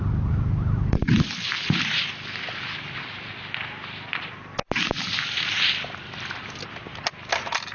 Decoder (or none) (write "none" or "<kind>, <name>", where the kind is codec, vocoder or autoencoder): none